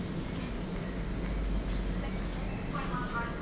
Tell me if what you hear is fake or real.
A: real